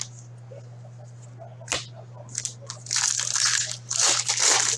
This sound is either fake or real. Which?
real